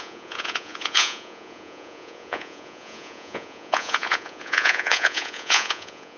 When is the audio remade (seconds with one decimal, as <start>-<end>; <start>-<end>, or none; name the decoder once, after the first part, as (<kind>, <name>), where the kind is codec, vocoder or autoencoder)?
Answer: 0.0-6.2 (vocoder, Vocos)